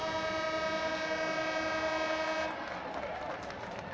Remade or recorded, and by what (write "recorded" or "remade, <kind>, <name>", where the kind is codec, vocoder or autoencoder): recorded